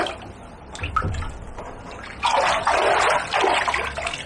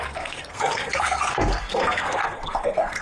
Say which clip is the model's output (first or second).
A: second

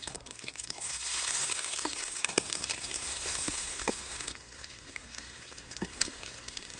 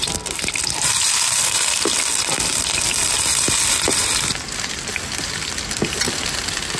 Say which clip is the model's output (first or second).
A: first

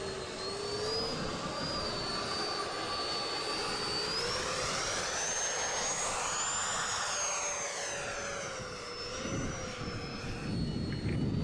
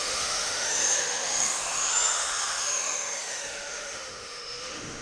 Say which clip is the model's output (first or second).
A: second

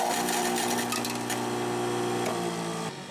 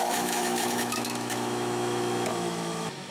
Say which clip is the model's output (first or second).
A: second